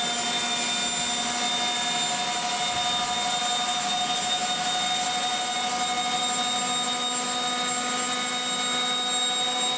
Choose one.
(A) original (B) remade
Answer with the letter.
A